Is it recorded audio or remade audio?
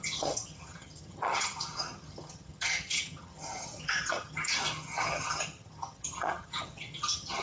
remade